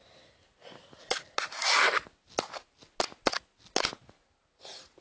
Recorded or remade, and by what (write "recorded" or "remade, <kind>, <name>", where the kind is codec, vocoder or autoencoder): recorded